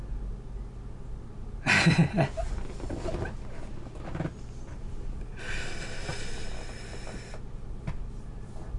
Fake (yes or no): no